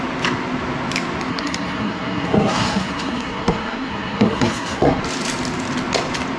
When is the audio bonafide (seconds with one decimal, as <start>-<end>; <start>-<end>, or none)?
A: 0.0-1.3; 5.0-6.4